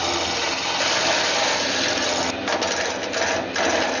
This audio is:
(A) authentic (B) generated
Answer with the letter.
A